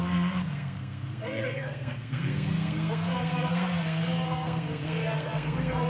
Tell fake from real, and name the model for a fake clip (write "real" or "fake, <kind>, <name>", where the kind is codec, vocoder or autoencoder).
fake, codec, SNAC